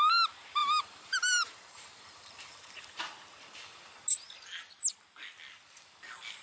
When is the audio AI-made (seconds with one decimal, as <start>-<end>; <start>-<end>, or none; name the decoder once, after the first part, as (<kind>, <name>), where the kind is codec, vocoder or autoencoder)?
0.6-3.0 (vocoder, BigVGAN v2)